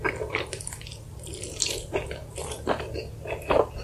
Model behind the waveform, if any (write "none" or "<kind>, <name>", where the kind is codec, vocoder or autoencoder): none